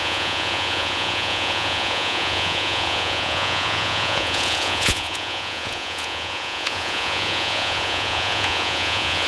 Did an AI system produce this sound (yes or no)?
yes